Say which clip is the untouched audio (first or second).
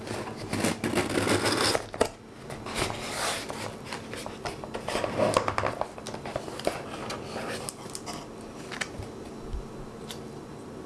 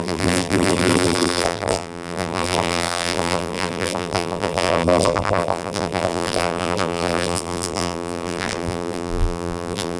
first